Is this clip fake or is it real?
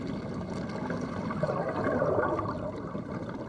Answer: real